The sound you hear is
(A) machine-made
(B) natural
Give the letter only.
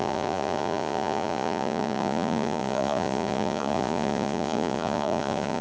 A